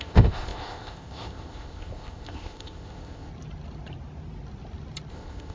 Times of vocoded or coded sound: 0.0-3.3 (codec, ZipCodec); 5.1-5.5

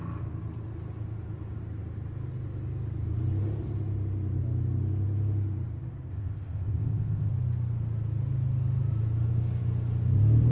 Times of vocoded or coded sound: 6.1-7.3 (codec, ZipCodec)

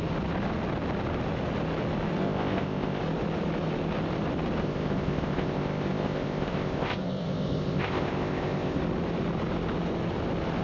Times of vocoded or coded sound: 2.2-3.0 (codec, ZipCodec); 4.6-8.8

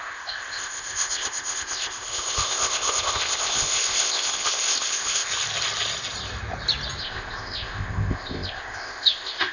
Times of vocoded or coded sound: 0.0-5.3 (codec, ZipCodec); 7.0-9.5

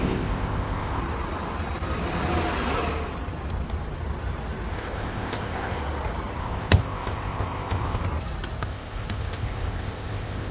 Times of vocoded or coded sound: 0.0-1.0 (codec, ZipCodec); 4.7-5.8; 6.4-8.0; 8.6-10.5